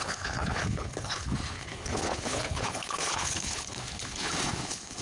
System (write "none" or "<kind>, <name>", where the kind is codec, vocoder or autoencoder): codec, HILCodec